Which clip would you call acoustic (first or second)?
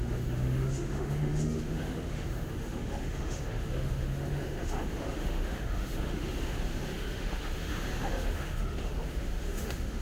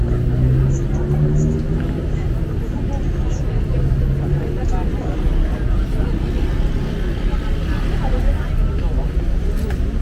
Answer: second